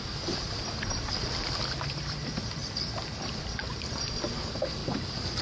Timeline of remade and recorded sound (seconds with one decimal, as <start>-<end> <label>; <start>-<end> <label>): 0.0-5.4 recorded

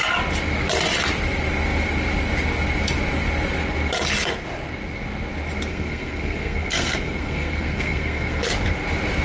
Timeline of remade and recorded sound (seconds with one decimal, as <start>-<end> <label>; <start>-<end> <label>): 0.0-5.7 recorded; 5.7-8.4 remade; 8.4-9.2 recorded

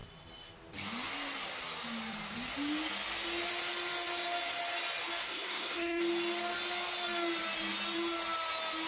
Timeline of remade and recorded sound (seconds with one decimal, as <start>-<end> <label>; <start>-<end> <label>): 0.0-5.2 recorded; 5.2-6.0 remade; 6.0-8.9 recorded

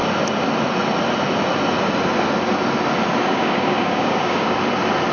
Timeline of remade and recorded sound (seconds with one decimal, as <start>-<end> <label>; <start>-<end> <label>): 0.0-3.3 recorded; 3.3-4.6 remade; 4.6-5.1 recorded

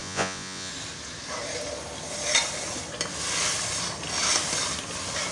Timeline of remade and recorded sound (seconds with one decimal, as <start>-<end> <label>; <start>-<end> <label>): 0.0-0.7 remade; 0.7-5.3 recorded

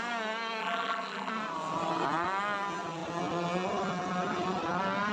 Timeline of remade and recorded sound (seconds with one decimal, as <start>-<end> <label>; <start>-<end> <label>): 0.0-0.6 recorded; 0.6-1.3 remade; 1.3-5.1 recorded